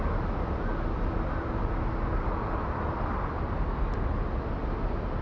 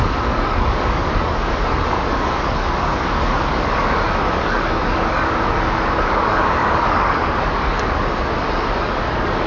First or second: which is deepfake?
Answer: second